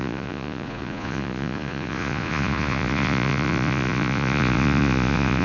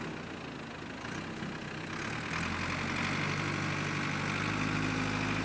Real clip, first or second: second